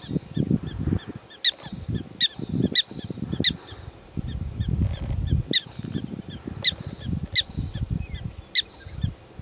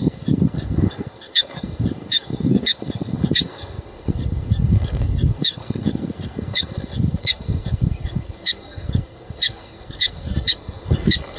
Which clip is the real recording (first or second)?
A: first